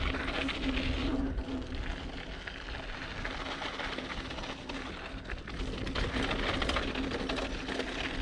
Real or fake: real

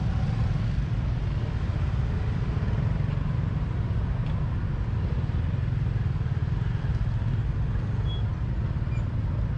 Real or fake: real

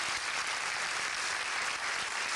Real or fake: real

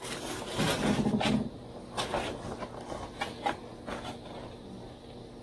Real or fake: real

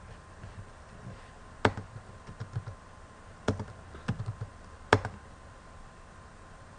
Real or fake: real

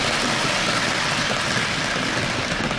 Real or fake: real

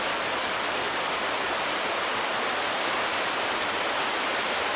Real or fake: real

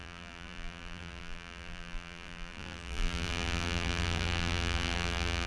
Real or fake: fake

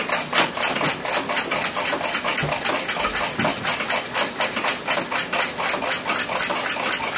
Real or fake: real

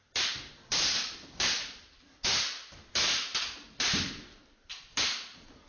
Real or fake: fake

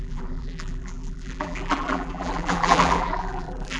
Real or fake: fake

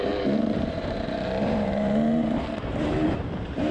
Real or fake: fake